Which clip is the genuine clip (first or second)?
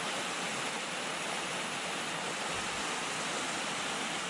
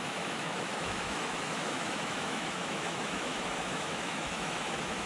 first